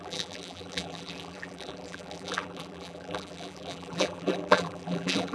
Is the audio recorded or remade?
remade